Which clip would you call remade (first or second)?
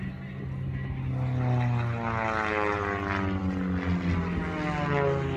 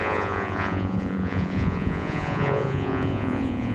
second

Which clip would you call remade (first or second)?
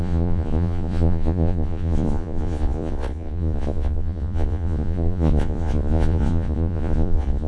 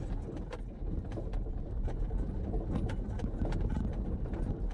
first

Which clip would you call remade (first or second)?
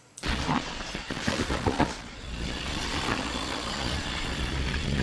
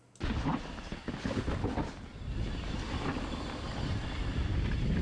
first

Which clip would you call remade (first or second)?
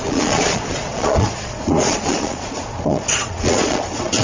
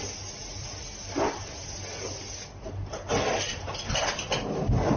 first